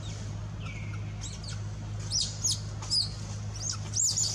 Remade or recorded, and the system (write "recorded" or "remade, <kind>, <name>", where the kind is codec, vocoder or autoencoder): recorded